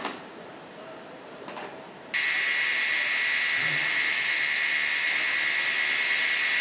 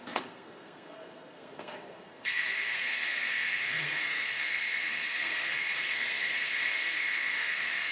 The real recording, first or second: first